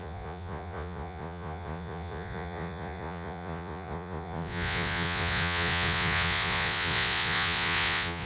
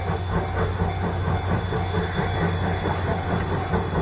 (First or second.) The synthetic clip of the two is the first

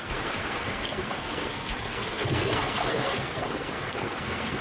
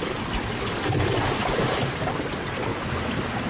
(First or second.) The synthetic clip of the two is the first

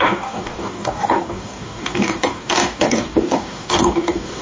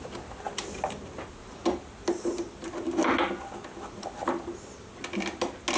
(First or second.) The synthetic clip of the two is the first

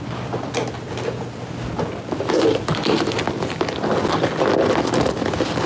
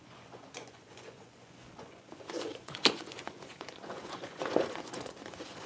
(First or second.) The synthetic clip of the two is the second